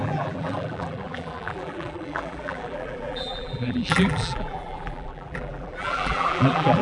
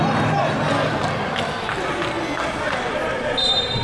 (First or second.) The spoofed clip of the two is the first